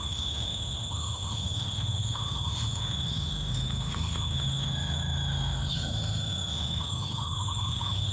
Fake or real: fake